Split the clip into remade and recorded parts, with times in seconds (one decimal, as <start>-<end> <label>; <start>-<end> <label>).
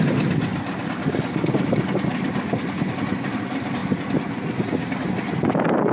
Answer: 0.0-5.9 recorded